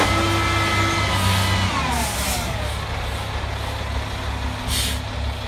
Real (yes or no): yes